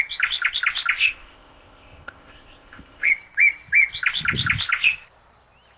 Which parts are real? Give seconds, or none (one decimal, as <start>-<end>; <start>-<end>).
0.0-1.0; 3.1-5.8